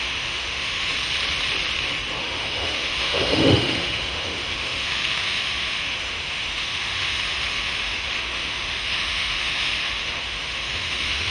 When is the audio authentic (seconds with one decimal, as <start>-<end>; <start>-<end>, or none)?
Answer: 0.9-2.2